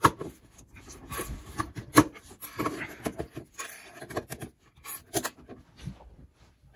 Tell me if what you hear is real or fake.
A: real